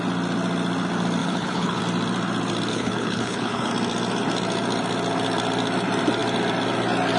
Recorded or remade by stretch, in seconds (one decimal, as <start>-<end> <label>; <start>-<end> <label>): 0.0-1.2 recorded; 1.2-1.8 remade; 1.8-2.7 recorded; 2.7-3.7 remade; 3.7-7.2 recorded